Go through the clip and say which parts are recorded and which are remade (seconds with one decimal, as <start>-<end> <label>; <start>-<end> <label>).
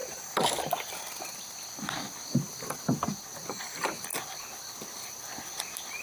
0.0-6.0 recorded